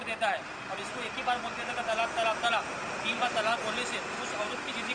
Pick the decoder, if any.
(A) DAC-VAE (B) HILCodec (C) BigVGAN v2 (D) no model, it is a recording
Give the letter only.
D